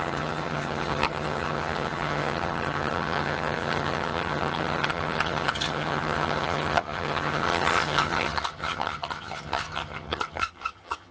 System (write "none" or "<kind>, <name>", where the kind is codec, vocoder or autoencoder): vocoder, HiFi-GAN